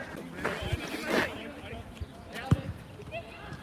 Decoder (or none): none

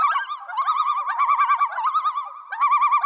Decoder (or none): none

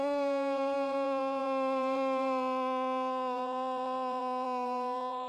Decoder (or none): vocoder, BigVGAN v2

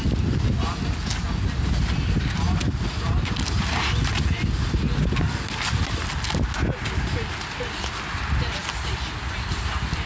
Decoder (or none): none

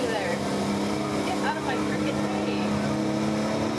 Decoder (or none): none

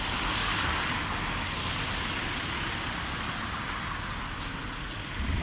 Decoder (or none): none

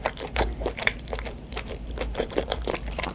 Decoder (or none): vocoder, BigVGAN v2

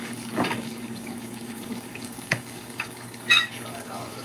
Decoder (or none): codec, DAC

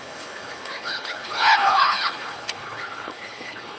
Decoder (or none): codec, HILCodec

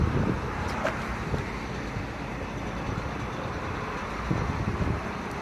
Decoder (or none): vocoder, BigVGAN v2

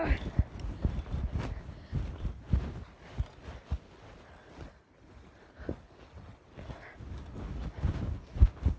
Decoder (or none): none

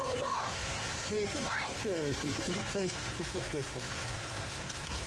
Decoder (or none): codec, SNAC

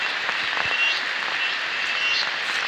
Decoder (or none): none